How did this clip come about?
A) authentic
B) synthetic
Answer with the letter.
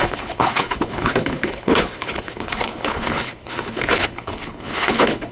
B